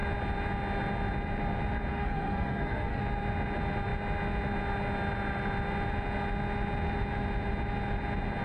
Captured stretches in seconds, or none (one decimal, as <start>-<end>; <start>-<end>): 0.0-1.9; 3.0-8.4